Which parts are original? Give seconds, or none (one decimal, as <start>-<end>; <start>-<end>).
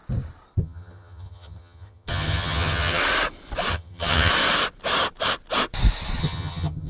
0.0-0.6; 3.0-3.7; 4.3-6.2